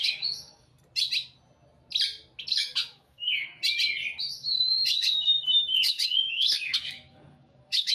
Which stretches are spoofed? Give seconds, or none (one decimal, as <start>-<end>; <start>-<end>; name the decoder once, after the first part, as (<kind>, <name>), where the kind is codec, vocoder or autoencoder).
0.0-0.7 (codec, DAC); 2.4-3.6; 4.2-7.9